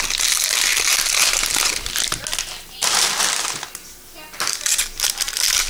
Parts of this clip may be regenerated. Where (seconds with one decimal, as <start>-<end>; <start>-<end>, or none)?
none